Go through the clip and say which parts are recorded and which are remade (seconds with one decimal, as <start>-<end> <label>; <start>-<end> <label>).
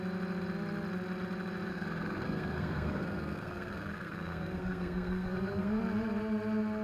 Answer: 0.0-1.7 recorded; 1.7-5.8 remade; 5.8-6.8 recorded